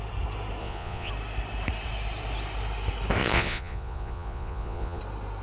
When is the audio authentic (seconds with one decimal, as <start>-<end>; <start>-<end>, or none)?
0.0-0.6; 1.1-3.2; 5.0-5.4